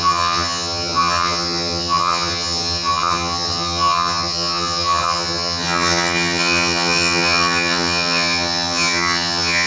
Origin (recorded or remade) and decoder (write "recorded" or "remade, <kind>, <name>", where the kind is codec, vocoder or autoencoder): remade, vocoder, HiFi-GAN